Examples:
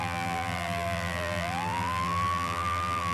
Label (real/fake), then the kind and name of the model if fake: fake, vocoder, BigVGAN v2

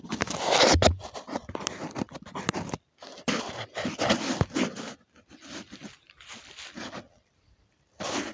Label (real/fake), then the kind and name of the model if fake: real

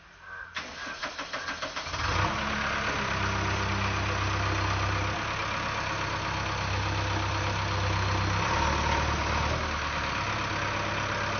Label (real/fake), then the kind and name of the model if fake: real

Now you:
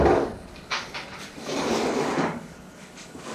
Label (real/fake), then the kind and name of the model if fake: fake, codec, DAC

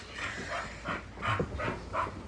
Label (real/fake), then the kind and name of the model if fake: real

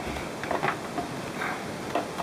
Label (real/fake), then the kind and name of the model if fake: real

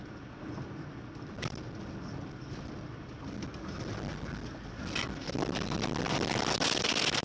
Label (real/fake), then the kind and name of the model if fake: real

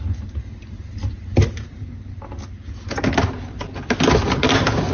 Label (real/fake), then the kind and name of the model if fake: real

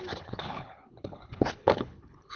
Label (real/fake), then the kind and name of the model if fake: fake, codec, HILCodec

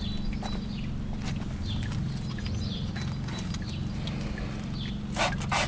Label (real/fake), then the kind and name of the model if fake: real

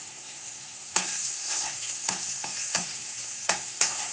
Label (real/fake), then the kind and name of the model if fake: fake, codec, SNAC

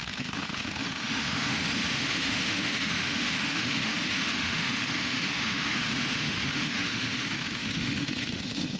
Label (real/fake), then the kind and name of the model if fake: fake, autoencoder, DAC-VAE